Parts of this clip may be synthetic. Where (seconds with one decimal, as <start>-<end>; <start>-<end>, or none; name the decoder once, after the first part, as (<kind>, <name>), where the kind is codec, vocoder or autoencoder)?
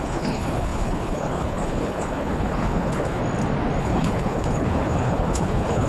0.0-3.2 (codec, HILCodec); 3.8-5.9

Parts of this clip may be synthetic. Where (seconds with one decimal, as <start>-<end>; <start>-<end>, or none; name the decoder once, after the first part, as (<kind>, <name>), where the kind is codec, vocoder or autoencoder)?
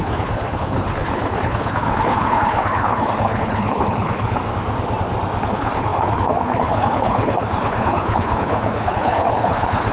0.0-4.4 (codec, HILCodec); 5.5-9.9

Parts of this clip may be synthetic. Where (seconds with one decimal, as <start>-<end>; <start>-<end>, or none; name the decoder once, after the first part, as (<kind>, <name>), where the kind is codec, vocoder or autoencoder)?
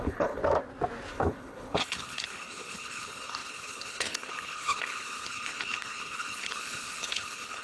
0.0-0.4 (codec, HILCodec); 1.1-7.6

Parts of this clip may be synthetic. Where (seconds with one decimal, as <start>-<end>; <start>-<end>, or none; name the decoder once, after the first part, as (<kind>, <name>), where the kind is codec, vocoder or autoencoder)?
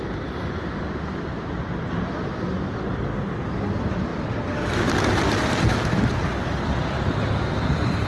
none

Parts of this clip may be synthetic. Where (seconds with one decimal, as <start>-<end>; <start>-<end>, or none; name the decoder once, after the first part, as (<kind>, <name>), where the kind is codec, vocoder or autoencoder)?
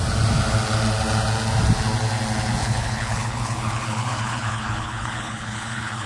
2.6-6.1 (codec, HILCodec)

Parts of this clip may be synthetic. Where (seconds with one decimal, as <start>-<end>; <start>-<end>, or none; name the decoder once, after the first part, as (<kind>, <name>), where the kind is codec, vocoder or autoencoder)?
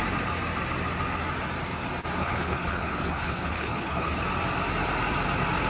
2.2-4.2 (codec, HILCodec)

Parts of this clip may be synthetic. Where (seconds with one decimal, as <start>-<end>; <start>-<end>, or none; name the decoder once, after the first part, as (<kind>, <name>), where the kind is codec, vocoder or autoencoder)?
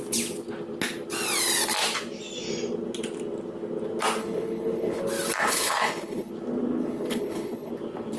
4.2-5.0 (codec, HILCodec); 5.4-6.3; 6.8-7.7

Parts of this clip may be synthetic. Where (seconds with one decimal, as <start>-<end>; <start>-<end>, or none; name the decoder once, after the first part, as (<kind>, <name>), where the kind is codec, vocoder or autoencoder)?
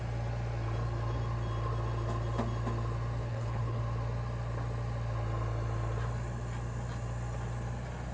3.2-3.8 (codec, HILCodec)